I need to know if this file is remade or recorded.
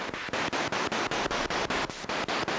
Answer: recorded